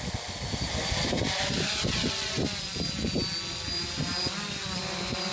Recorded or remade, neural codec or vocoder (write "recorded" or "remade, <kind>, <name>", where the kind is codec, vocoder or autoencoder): recorded